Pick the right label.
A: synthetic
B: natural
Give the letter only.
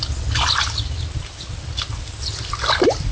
B